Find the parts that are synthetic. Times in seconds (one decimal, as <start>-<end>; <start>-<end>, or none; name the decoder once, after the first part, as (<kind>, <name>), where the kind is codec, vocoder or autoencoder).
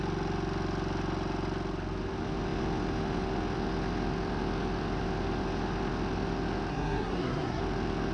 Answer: 6.7-7.6 (codec, SNAC)